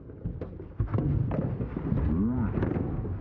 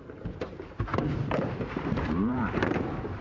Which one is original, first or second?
first